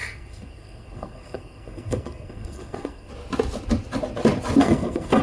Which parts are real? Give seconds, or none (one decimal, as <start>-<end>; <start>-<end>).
3.1-4.6